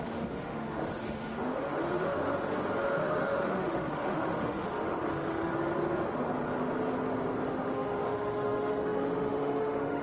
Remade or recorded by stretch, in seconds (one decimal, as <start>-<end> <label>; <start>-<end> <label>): 0.0-2.2 remade; 2.2-2.8 recorded; 2.8-5.5 remade; 5.5-7.5 recorded; 7.5-10.0 remade